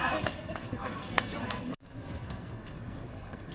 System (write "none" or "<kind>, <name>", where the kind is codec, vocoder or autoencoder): codec, SNAC